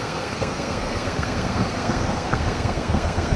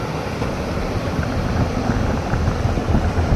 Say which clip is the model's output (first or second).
first